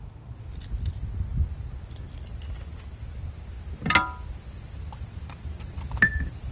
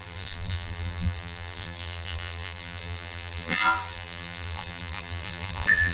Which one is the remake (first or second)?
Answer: second